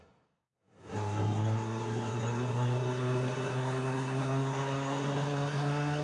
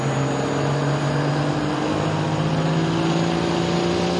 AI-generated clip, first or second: first